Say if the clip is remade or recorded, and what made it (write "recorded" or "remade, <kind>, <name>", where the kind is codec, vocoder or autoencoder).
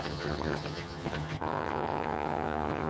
remade, vocoder, HiFi-GAN